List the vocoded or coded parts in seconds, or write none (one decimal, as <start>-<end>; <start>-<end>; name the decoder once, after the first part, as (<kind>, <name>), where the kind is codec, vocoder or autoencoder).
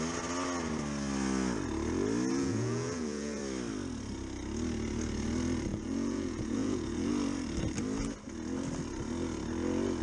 2.3-3.4 (vocoder, Vocos); 5.7-7.1